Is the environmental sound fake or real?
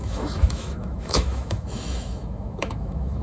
fake